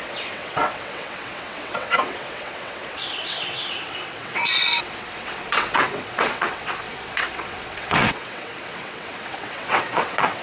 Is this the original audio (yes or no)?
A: no